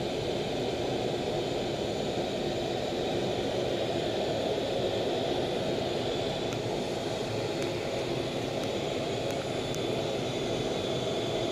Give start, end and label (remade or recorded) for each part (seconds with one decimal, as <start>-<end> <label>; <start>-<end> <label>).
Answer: 0.0-11.5 recorded